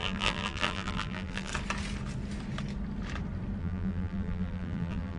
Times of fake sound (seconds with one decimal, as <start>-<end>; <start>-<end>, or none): 0.0-1.5; 3.6-5.2